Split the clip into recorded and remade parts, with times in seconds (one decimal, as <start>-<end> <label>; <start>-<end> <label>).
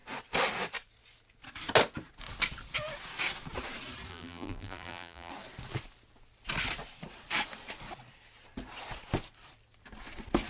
0.0-4.1 recorded; 4.1-5.3 remade; 5.3-10.5 recorded